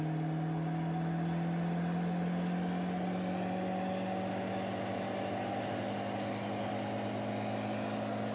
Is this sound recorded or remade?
recorded